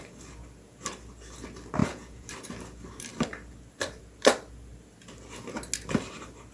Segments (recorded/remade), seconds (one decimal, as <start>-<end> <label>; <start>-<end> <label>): 0.0-1.8 recorded; 1.8-2.3 remade; 2.3-6.5 recorded